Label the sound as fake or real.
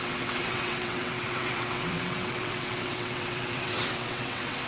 fake